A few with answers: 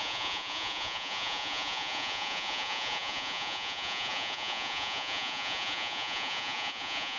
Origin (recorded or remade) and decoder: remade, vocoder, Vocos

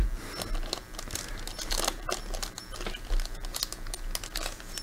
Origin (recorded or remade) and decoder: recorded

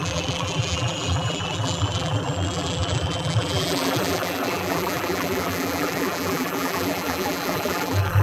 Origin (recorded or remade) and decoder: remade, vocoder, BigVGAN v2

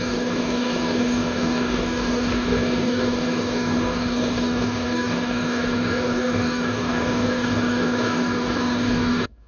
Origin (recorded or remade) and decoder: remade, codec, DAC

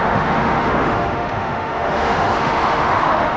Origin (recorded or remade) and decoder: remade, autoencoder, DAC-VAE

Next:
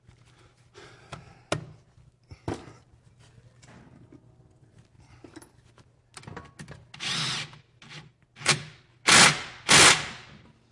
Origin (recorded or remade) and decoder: recorded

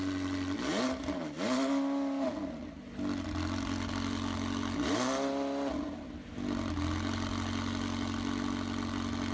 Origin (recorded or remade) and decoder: recorded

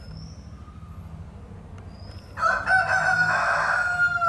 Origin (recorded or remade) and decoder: recorded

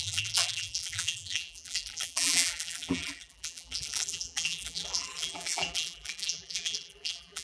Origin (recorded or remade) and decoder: remade, vocoder, BigVGAN v2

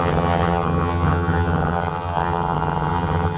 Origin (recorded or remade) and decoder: remade, vocoder, HiFi-GAN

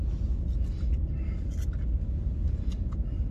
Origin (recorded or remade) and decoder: recorded